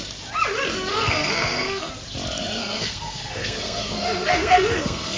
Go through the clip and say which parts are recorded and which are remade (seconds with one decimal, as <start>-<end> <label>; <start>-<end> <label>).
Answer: 0.0-0.9 recorded; 0.9-1.9 remade; 1.9-2.6 recorded; 2.6-5.2 remade